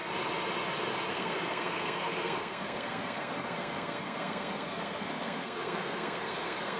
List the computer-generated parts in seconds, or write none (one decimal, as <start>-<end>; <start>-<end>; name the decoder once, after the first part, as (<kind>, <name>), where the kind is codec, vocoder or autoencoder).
1.1-6.8 (codec, SNAC)